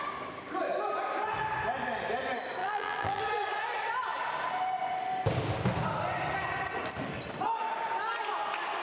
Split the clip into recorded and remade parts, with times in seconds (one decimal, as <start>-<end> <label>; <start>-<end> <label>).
0.0-2.6 recorded; 2.6-3.2 remade; 3.2-8.8 recorded